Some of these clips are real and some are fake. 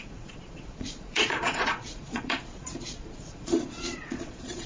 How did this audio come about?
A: fake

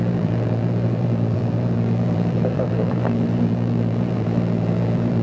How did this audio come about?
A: fake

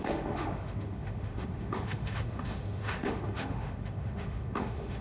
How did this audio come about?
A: fake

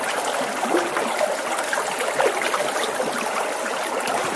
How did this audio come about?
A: real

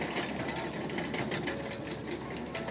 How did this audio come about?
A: real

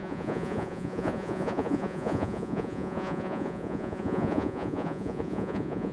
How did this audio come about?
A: fake